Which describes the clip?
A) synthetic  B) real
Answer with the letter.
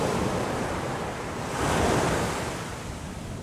A